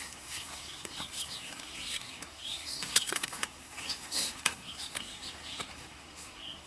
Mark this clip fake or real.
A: fake